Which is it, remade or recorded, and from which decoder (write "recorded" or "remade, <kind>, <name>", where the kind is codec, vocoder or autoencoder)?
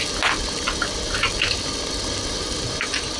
recorded